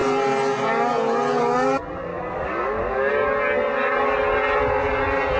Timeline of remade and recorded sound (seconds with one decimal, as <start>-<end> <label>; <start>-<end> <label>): 0.0-2.1 recorded; 2.1-3.1 remade; 3.1-5.4 recorded